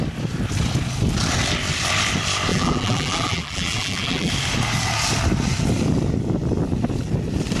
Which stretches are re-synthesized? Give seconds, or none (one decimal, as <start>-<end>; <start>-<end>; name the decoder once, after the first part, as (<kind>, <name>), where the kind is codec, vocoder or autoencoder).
2.5-4.3 (vocoder, BigVGAN v2)